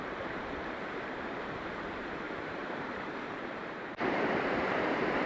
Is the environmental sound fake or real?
fake